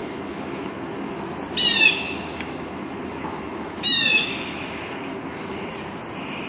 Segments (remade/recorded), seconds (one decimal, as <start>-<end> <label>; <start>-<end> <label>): 0.0-1.1 remade; 1.1-1.8 recorded; 1.8-5.7 remade; 5.7-6.5 recorded